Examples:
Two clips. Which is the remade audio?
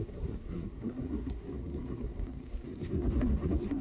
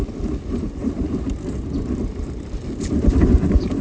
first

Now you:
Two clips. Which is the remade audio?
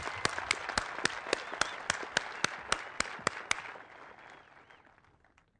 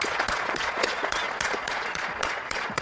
second